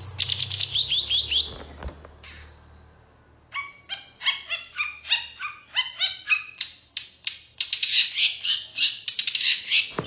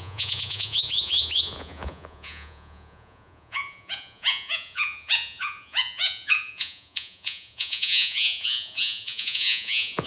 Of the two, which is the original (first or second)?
first